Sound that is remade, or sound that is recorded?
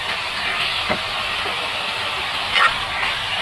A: remade